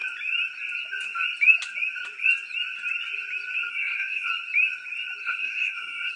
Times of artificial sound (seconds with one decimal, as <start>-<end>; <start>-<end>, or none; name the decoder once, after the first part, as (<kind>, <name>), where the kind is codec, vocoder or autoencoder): 3.7-4.3 (codec, SNAC); 5.2-6.2